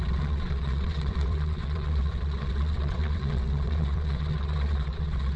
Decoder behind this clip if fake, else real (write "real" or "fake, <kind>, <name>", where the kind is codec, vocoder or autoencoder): fake, vocoder, WaveNeXt